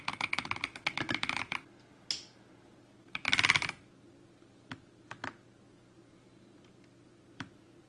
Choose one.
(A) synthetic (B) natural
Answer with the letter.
B